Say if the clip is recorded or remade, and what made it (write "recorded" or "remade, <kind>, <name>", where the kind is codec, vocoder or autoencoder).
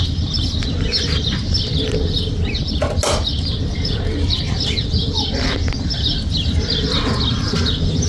recorded